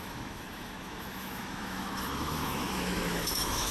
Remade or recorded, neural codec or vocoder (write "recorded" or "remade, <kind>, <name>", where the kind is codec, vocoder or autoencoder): remade, autoencoder, DAC-VAE